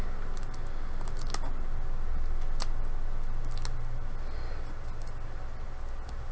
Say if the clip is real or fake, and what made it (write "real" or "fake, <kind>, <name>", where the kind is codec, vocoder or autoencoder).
real